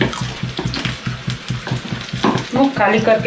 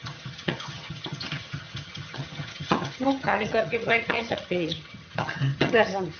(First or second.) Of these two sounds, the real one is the first